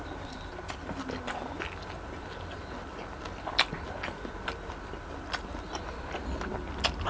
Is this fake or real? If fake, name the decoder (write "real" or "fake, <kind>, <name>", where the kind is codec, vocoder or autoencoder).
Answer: real